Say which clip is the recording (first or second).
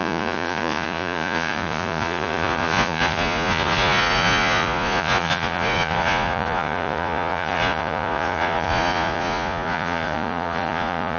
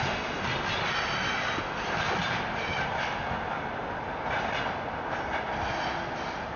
second